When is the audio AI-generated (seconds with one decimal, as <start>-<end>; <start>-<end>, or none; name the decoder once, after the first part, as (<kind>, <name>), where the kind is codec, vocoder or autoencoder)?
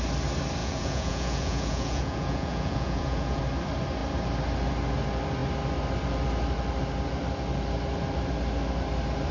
0.6-3.4 (vocoder, Vocos)